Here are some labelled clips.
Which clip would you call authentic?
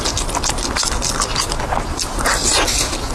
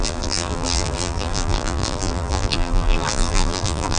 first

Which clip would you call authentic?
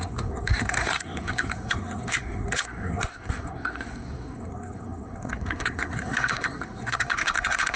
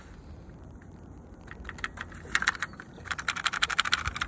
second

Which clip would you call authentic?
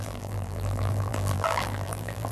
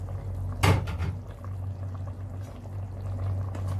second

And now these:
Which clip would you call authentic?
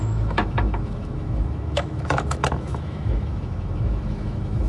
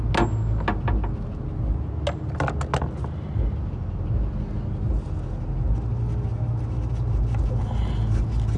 second